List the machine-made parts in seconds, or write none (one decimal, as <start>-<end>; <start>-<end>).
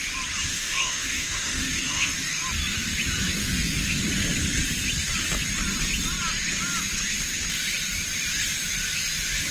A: 0.5-2.1; 3.4-4.0